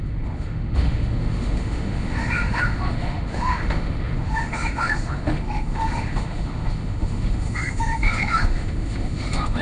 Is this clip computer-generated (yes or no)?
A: yes